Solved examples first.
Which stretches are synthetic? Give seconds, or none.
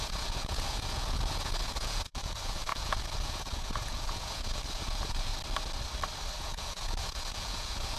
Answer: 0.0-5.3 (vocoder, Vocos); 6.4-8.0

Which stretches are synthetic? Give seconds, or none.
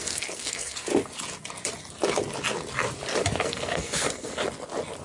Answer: 0.0-0.9 (codec, SNAC); 3.4-4.3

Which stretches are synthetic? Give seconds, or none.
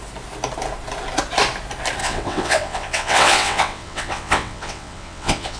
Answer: 2.0-5.6 (vocoder, WaveNeXt)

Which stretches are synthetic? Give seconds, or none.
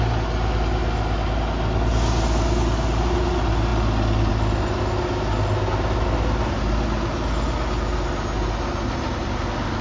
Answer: none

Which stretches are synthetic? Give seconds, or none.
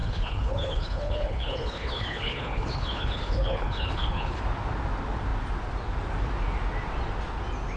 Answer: 0.0-4.4 (codec, HILCodec)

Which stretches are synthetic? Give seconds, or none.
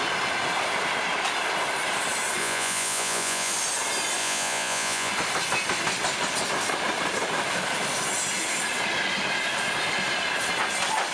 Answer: 2.4-3.5 (vocoder, Vocos); 4.2-5.1